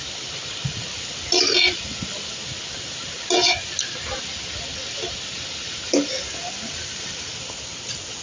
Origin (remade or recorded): recorded